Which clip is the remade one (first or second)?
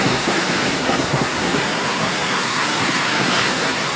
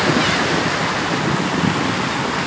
first